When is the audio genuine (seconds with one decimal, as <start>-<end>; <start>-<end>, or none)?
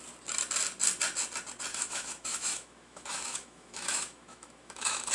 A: 0.0-1.7